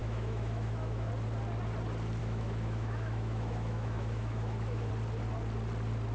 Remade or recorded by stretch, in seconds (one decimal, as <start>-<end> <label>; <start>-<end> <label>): 0.0-1.1 remade; 1.1-2.2 recorded; 2.2-4.9 remade; 4.9-6.1 recorded